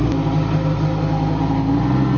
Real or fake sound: real